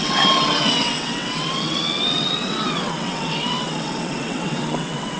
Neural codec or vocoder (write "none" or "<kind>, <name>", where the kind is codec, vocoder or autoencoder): vocoder, WaveNeXt